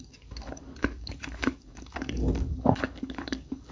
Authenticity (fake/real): fake